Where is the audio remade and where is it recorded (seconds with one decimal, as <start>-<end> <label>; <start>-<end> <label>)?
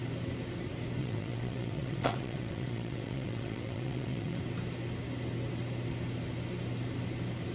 0.0-1.0 recorded; 1.0-4.4 remade; 4.4-7.5 recorded